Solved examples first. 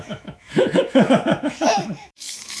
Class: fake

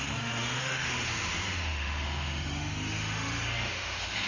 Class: fake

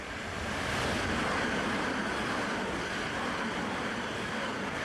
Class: real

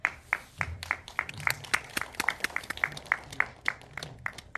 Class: real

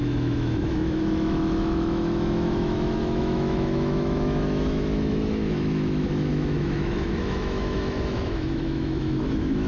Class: fake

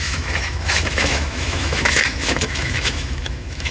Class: fake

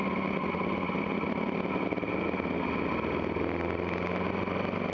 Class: real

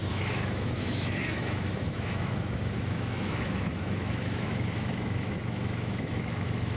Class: fake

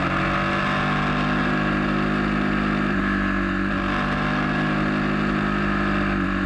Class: real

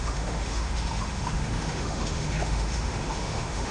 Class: fake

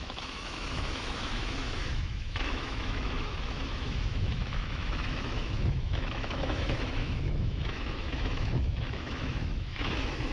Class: fake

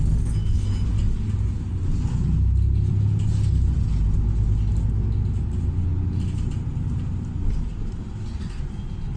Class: real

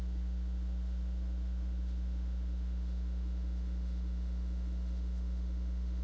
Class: fake